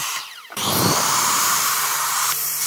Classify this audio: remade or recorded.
remade